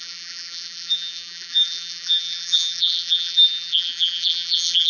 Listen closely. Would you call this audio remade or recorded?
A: remade